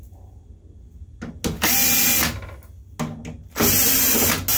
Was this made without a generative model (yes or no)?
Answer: yes